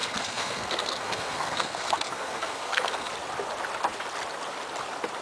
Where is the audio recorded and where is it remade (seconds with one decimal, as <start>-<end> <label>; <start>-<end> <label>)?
0.0-3.1 remade; 3.1-5.2 recorded